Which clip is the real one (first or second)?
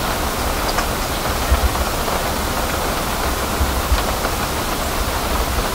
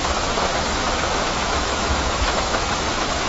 first